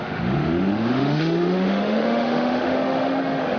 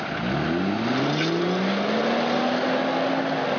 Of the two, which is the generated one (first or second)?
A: first